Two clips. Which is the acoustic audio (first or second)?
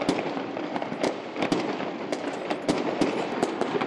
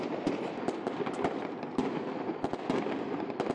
second